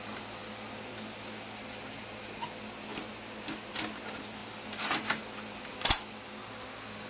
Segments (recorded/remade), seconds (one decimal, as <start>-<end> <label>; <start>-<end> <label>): 0.0-7.1 recorded